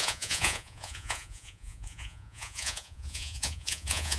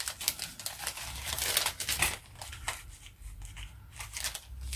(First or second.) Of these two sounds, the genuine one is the second